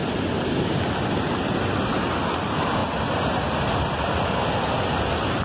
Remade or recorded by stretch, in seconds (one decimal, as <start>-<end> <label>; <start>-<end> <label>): 0.0-5.4 recorded